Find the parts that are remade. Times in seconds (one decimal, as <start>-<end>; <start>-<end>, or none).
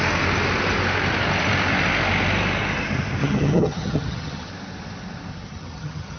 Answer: 3.2-4.5; 5.3-6.2